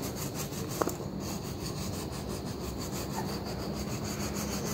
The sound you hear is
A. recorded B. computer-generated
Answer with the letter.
A